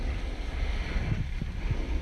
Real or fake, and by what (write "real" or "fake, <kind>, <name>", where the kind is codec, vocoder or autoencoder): real